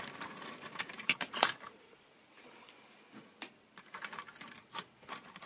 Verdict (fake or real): real